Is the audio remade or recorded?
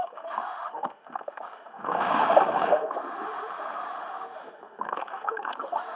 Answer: remade